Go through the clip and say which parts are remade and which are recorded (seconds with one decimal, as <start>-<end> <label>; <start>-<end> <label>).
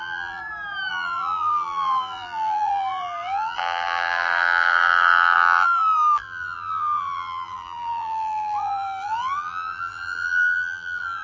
0.0-0.4 remade; 0.4-0.9 recorded; 0.9-11.2 remade